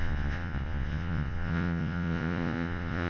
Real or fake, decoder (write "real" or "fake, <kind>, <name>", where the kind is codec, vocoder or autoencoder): fake, vocoder, Vocos